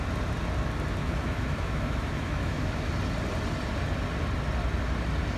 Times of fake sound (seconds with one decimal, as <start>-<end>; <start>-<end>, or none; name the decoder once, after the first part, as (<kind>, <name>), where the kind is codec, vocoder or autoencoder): 1.0-2.9 (autoencoder, DAC-VAE)